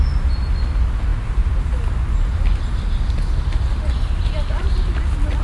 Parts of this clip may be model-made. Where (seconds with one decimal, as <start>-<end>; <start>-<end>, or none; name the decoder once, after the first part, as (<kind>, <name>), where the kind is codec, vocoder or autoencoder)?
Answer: none